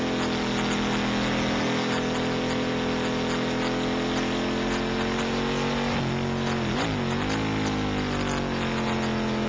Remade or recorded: recorded